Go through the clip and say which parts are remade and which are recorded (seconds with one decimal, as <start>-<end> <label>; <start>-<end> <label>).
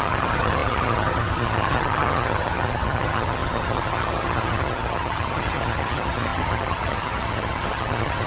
0.0-8.3 remade